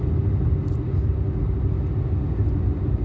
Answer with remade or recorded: recorded